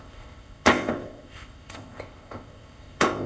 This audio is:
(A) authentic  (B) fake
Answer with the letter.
B